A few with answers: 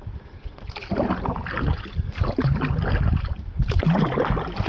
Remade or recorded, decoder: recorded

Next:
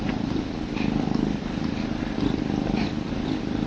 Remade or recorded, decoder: recorded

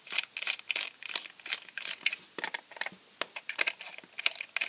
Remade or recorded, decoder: recorded